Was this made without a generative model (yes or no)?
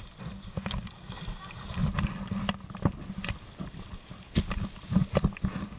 yes